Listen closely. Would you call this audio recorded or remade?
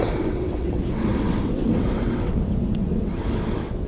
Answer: remade